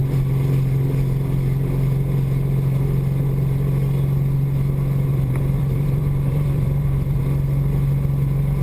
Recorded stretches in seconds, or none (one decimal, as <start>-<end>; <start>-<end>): 0.0-5.1; 7.2-8.6